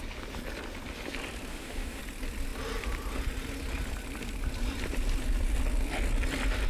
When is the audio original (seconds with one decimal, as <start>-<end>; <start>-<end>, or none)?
0.0-1.5; 2.0-6.7